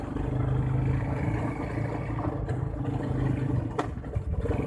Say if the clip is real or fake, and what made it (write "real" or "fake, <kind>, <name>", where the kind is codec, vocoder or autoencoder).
real